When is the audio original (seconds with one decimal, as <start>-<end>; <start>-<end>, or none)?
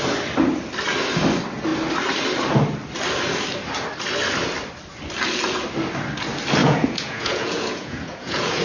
0.0-6.6